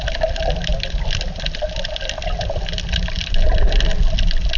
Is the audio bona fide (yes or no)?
yes